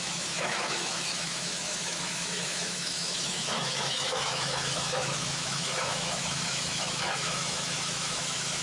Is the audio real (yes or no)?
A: no